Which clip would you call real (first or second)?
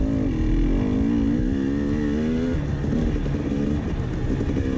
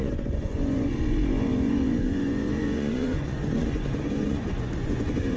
first